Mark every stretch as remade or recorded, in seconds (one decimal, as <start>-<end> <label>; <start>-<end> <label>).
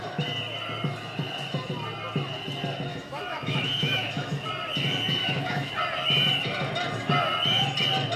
0.0-2.9 recorded; 2.9-4.5 remade; 4.5-5.2 recorded; 5.2-5.7 remade; 5.7-8.2 recorded